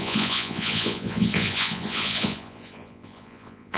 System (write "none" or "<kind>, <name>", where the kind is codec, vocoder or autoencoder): vocoder, Vocos